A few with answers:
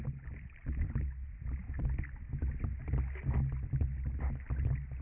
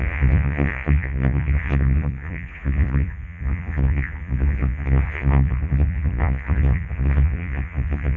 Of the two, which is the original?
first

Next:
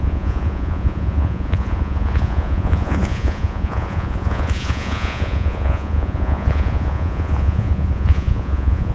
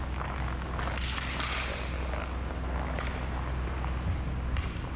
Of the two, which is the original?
second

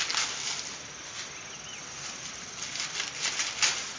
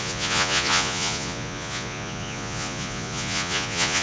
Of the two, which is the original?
first